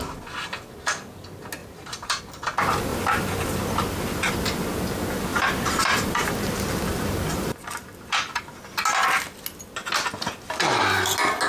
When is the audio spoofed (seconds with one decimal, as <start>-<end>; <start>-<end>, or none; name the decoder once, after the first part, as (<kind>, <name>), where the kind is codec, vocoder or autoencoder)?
1.6-2.2 (vocoder, BigVGAN v2); 2.9-4.3; 5.3-8.4